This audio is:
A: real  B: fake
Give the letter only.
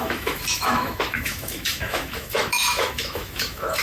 B